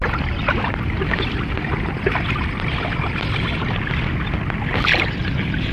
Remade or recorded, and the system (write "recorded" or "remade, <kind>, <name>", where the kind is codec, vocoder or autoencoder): recorded